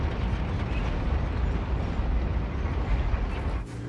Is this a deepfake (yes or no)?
no